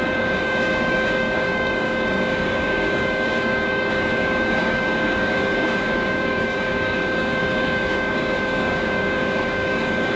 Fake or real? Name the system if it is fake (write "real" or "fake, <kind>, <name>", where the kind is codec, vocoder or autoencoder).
fake, codec, DAC